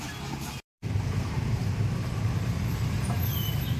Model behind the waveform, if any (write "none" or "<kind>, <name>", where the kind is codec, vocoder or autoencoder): vocoder, BigVGAN v2